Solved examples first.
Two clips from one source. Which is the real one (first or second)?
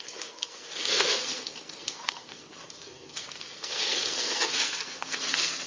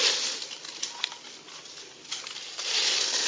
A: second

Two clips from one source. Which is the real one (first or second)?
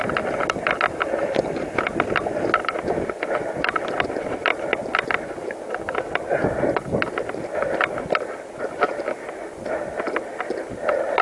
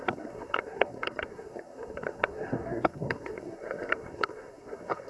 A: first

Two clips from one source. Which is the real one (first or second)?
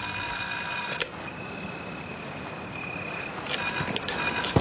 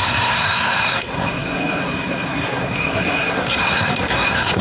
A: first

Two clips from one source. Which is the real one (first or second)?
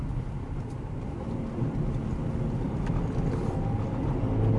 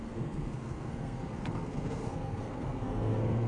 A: first